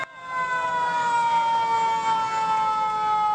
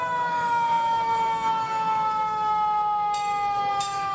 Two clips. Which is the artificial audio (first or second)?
second